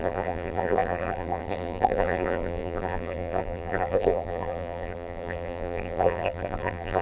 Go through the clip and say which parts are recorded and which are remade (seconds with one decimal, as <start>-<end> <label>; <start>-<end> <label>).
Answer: 0.0-7.0 remade